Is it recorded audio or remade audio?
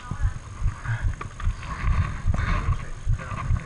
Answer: recorded